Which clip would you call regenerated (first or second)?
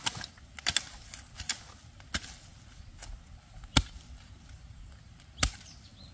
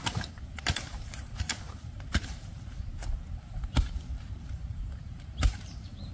second